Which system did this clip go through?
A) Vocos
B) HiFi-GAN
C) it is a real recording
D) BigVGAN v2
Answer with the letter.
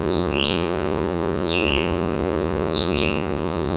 A